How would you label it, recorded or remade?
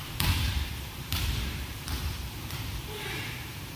remade